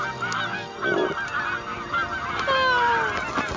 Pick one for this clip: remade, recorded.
recorded